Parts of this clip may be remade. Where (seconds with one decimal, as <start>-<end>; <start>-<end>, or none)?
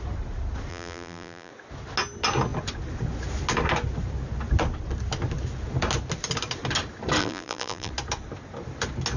0.7-1.5; 7.2-7.9